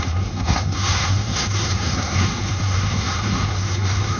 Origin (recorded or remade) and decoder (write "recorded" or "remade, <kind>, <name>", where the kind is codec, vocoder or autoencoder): remade, codec, SNAC